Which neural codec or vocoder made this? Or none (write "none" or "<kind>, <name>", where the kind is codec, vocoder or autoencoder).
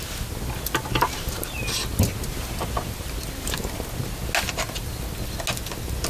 none